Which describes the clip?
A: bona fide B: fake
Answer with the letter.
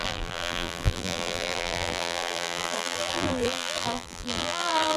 B